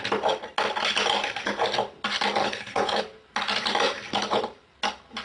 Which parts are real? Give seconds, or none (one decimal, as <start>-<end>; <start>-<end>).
0.0-2.4; 3.0-5.2